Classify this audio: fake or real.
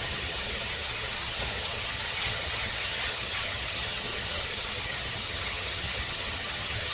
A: fake